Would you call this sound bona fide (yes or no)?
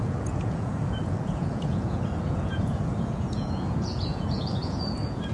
no